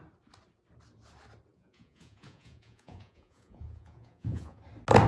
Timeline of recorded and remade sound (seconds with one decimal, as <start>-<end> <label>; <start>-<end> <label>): 0.0-1.5 recorded; 1.5-4.6 remade; 4.6-5.1 recorded